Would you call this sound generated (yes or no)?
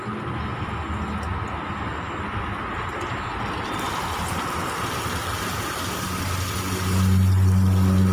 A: no